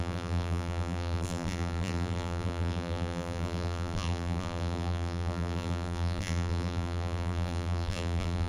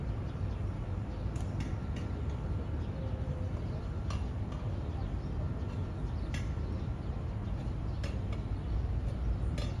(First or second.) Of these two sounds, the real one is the second